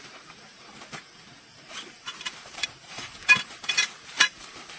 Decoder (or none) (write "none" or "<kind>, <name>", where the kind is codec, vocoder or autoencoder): vocoder, BigVGAN v2